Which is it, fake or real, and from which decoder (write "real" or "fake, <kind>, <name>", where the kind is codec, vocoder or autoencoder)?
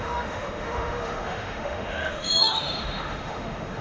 fake, autoencoder, DAC-VAE